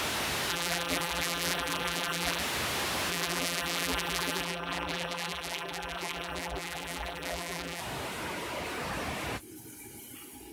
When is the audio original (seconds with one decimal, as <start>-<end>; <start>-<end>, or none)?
0.0-0.5; 2.4-3.1; 7.8-10.5